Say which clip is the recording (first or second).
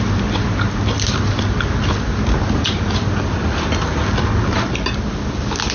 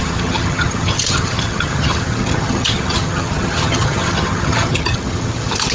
first